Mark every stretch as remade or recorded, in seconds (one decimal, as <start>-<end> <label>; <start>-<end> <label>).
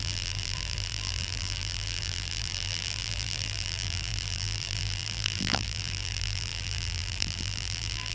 0.0-8.1 remade